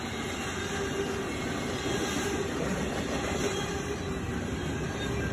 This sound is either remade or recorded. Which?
recorded